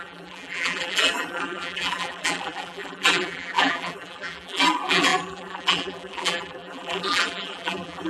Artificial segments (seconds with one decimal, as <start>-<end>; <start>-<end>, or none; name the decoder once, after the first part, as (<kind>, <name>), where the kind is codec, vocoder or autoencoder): 0.0-8.1 (vocoder, BigVGAN v2)